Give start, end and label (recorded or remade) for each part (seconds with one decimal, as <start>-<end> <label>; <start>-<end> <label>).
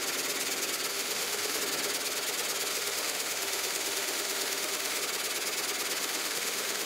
0.0-0.9 recorded; 0.9-1.6 remade; 1.6-2.7 recorded; 2.7-5.0 remade; 5.0-6.0 recorded; 6.0-6.9 remade